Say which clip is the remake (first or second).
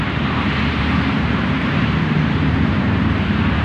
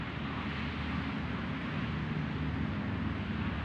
first